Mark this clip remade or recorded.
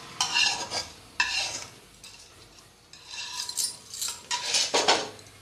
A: recorded